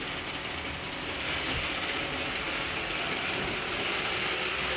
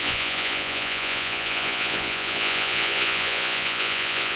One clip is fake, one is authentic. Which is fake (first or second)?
second